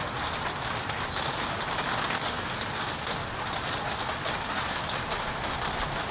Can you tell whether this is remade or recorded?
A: recorded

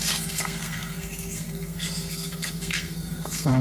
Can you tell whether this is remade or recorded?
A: remade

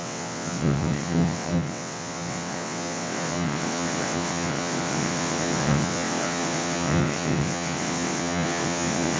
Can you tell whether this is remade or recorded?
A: remade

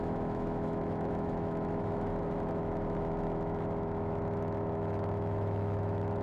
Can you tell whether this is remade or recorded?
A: remade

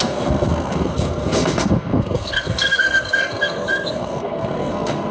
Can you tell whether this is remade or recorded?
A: remade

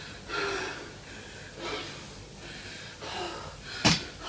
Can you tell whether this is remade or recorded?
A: recorded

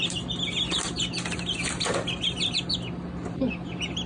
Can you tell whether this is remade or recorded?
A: recorded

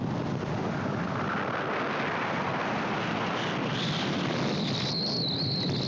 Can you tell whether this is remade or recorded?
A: recorded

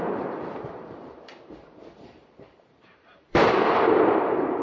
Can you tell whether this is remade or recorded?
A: remade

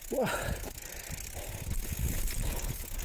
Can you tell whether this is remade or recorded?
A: recorded